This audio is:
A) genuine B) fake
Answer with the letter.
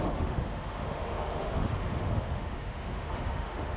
B